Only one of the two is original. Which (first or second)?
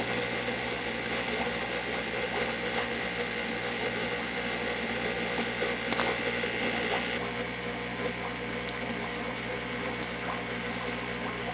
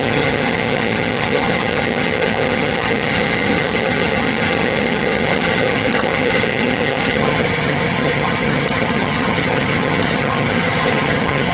first